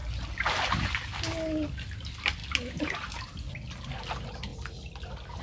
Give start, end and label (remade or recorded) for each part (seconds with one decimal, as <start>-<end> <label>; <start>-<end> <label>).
0.0-5.4 recorded